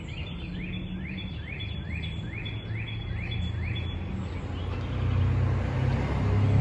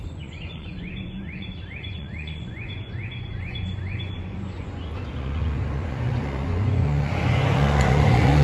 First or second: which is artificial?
second